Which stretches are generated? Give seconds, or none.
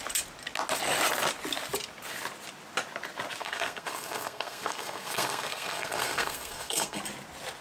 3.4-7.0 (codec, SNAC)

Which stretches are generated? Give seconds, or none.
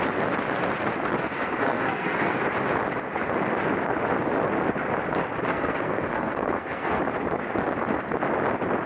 1.2-2.4 (codec, SNAC); 5.5-7.0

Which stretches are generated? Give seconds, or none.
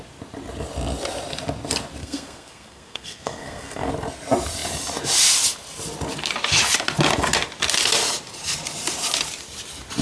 2.0-3.9 (codec, SNAC)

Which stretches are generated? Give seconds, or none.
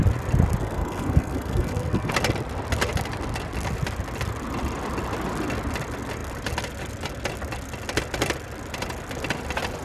0.6-2.1 (codec, SNAC)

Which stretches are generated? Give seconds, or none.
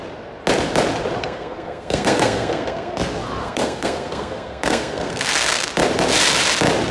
1.2-3.0 (codec, SNAC); 3.4-5.7